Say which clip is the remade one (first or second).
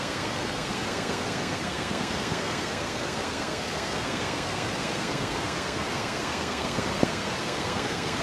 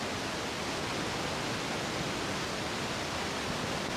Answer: first